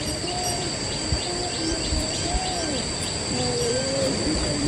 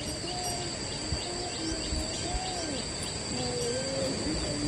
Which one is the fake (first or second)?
first